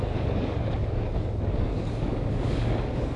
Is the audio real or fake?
fake